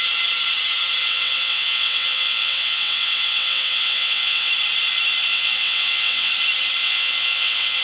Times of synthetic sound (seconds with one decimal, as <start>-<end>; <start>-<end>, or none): 1.0-4.5; 5.3-6.3; 6.8-7.8